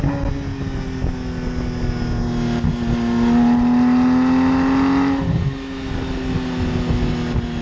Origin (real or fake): real